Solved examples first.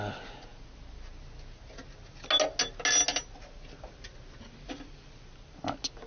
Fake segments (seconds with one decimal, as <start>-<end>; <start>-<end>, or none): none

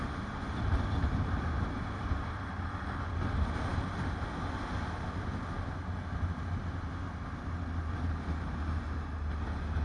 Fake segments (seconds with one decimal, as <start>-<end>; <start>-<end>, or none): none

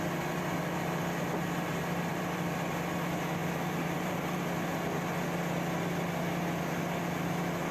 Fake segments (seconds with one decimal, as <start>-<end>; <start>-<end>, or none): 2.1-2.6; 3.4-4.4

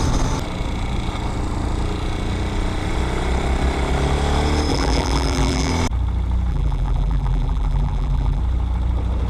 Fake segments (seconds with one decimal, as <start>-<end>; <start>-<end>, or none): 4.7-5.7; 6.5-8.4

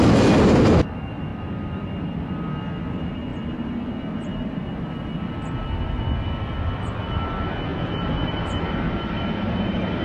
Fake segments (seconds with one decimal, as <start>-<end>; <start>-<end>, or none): 1.3-1.9; 7.7-10.0

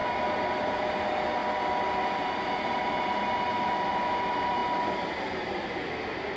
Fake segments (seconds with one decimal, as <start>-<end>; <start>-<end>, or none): 0.0-0.8